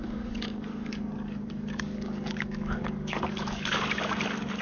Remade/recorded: remade